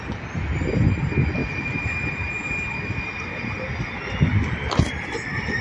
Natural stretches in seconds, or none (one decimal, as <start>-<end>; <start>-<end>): 0.0-5.6